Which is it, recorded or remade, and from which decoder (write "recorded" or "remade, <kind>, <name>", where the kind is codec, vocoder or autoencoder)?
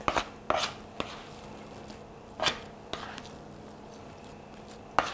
recorded